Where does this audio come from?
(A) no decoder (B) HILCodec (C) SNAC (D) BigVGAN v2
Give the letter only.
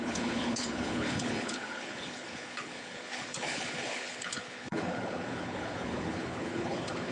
B